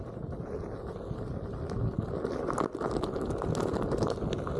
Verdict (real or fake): real